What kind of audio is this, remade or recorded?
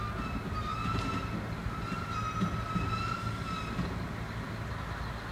recorded